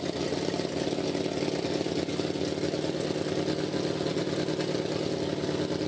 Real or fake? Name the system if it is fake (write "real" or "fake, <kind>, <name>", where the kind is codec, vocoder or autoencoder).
real